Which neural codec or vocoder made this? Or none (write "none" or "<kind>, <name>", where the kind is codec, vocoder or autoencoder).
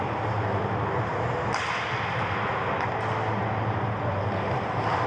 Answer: none